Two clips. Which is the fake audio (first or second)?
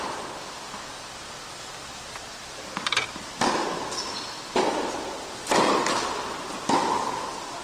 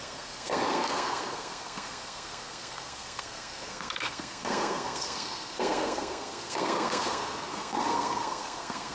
second